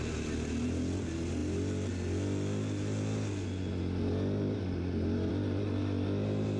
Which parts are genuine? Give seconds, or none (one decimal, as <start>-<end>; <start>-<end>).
0.0-6.6